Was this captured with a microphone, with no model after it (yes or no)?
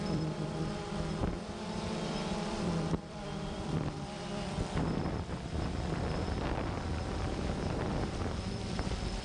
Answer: no